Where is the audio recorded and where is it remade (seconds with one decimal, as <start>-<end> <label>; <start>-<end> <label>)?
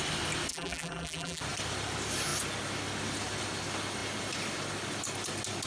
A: 0.0-0.5 recorded; 0.5-1.4 remade; 1.4-5.7 recorded